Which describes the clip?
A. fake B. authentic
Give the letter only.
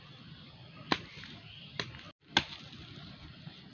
B